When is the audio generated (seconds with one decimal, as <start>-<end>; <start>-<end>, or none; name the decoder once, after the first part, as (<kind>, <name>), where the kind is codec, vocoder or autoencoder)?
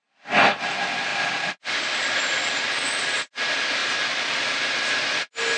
1.1-2.6 (vocoder, BigVGAN v2); 3.8-4.7